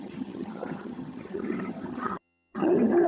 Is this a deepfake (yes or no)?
yes